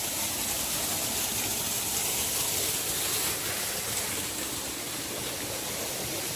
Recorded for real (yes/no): yes